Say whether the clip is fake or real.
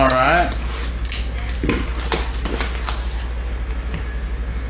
real